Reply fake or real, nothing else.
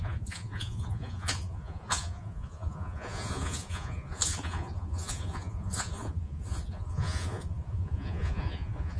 fake